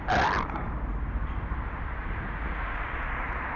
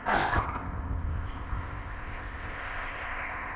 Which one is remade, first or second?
second